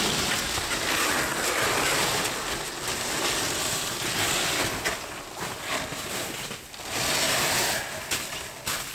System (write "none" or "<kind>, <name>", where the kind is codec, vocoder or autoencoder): none